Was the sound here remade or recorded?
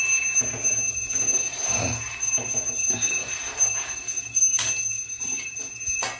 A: recorded